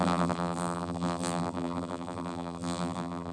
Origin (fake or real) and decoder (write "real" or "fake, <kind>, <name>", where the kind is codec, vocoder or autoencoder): fake, vocoder, BigVGAN v2